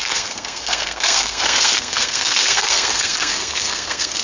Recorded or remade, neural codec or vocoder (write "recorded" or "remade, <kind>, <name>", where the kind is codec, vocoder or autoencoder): remade, codec, SNAC